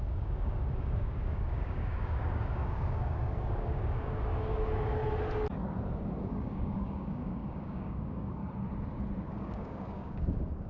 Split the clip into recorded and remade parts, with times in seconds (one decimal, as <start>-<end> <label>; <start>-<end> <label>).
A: 0.0-5.0 remade; 5.0-6.2 recorded; 6.2-8.4 remade; 8.4-9.3 recorded; 9.3-10.7 remade

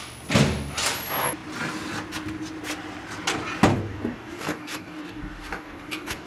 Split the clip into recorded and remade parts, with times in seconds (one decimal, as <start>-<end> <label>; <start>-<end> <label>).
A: 0.0-3.7 recorded; 3.7-6.3 remade

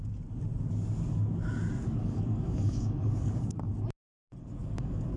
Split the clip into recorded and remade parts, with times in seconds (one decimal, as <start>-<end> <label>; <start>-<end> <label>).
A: 0.0-1.8 recorded; 1.8-3.7 remade; 3.7-4.6 recorded; 4.6-5.2 remade

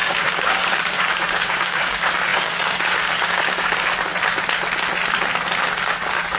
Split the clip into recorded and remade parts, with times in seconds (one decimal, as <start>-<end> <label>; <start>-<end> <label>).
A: 0.0-4.1 remade; 4.1-5.6 recorded; 5.6-6.4 remade